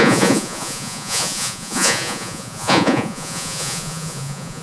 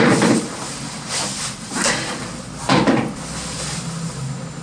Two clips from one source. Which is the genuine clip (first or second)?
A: second